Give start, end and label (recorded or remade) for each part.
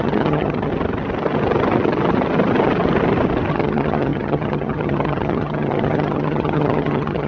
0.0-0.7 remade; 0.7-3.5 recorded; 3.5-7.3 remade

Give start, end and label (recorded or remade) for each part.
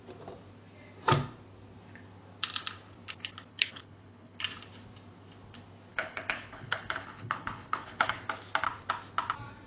0.0-3.5 recorded; 3.5-4.4 remade; 4.4-5.9 recorded; 5.9-8.2 remade; 8.2-9.7 recorded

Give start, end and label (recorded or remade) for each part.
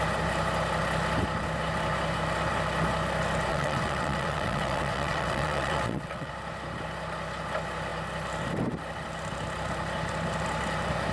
0.0-3.5 recorded; 3.5-6.3 remade; 6.3-11.1 recorded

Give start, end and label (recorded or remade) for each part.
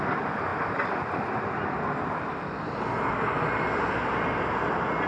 0.0-5.1 recorded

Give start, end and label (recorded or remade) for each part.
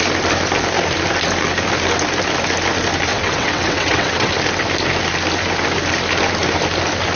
0.0-3.1 recorded; 3.1-4.3 remade; 4.3-7.2 recorded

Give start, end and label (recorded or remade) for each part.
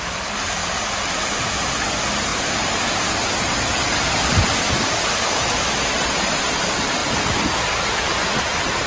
0.0-2.3 remade; 2.3-6.5 recorded; 6.5-8.9 remade